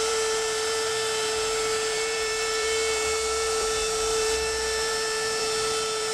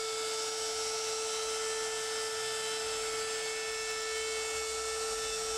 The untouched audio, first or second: second